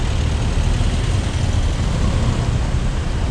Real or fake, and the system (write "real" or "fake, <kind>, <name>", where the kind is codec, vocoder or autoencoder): real